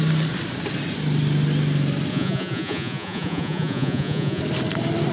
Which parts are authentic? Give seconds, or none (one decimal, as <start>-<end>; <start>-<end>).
0.0-2.1; 4.4-5.1